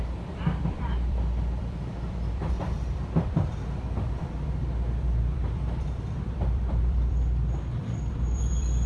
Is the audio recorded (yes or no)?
no